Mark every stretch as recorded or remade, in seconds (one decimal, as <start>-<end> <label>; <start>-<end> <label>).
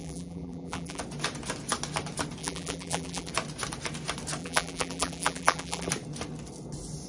0.0-1.0 remade; 1.0-2.4 recorded; 2.4-3.3 remade; 3.3-4.4 recorded; 4.4-5.9 remade; 5.9-7.1 recorded